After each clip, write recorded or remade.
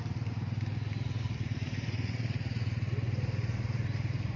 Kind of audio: recorded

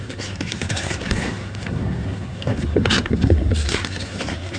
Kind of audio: remade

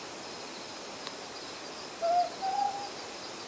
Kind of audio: recorded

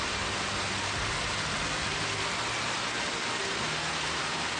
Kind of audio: recorded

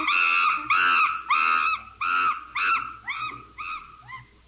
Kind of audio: recorded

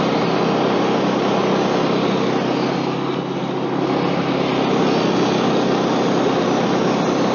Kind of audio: recorded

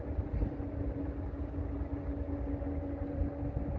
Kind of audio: recorded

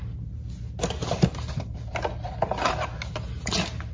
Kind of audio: recorded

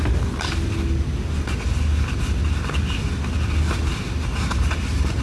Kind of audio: recorded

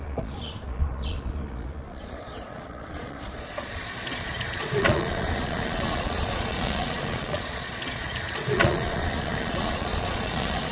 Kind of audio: remade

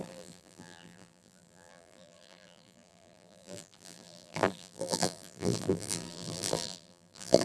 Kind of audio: remade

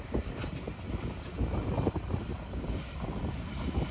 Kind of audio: recorded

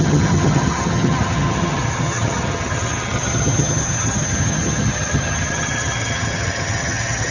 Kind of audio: remade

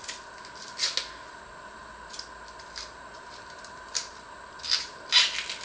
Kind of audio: recorded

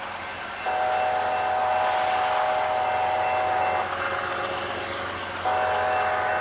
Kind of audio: recorded